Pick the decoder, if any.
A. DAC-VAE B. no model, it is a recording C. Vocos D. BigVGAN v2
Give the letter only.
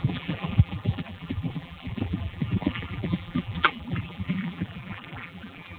D